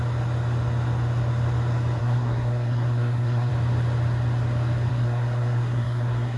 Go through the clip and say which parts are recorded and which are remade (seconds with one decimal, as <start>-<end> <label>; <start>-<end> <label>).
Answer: 0.0-2.0 recorded; 2.0-3.5 remade; 3.5-4.9 recorded; 4.9-6.4 remade